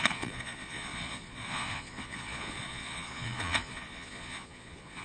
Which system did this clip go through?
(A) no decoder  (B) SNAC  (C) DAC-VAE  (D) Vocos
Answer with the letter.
D